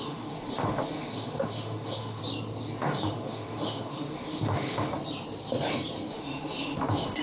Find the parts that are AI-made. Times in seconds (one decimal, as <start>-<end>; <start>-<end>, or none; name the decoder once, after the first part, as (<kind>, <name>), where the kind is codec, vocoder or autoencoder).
0.0-2.2 (autoencoder, DAC-VAE); 2.8-4.9; 6.1-7.2